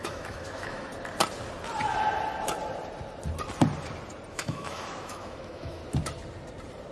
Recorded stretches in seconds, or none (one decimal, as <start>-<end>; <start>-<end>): 0.9-4.3; 5.8-6.9